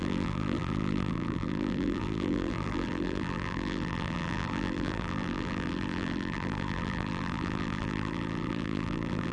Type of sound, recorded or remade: remade